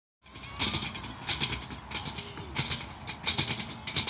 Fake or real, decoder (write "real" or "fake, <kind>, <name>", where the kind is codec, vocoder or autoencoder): real